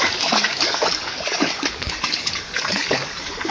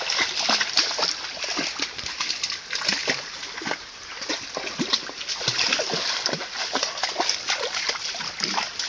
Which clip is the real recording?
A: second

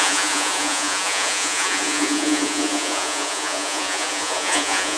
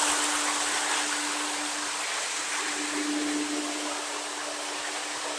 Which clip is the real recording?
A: second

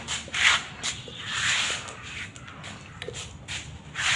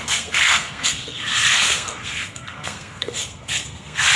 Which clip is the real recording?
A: first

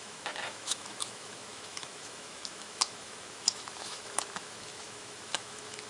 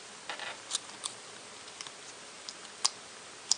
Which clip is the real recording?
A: second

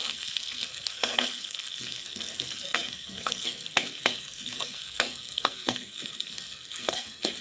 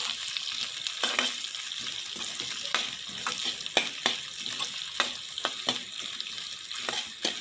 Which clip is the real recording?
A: second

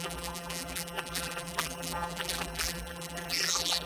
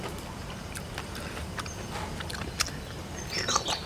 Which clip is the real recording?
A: second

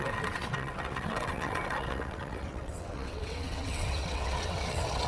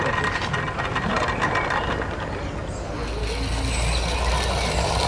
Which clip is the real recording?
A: second